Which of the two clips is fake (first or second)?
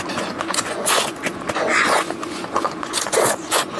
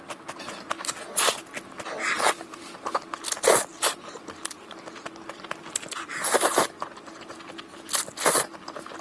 first